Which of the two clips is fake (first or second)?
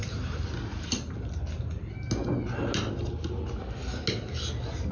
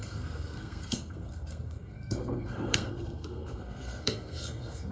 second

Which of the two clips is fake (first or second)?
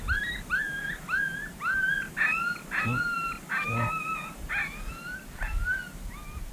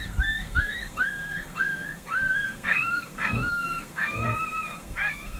second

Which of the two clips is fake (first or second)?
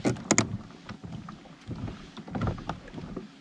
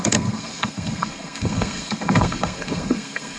second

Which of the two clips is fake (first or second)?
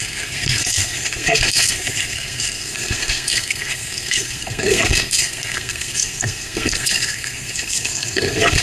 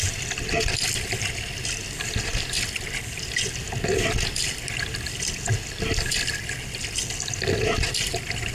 first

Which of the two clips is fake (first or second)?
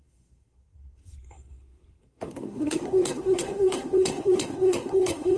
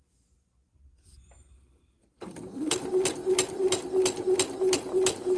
first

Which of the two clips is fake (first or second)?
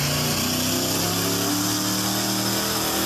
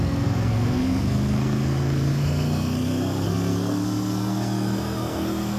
second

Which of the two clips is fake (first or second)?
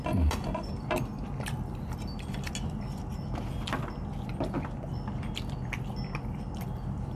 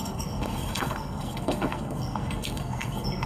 second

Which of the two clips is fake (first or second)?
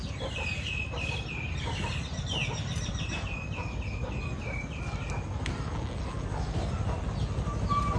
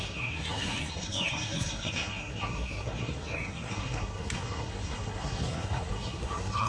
second